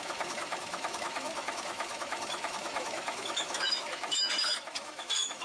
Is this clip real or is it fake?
fake